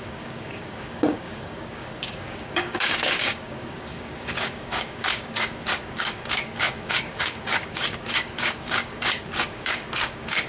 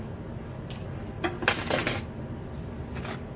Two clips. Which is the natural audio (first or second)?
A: second